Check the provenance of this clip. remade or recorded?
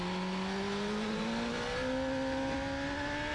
recorded